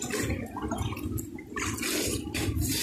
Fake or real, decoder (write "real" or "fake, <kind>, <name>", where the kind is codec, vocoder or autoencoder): real